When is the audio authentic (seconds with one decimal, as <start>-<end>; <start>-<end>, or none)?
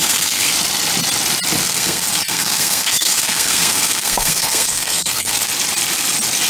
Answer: 0.5-1.6; 5.5-6.5